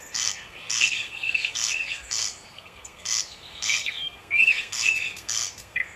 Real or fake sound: fake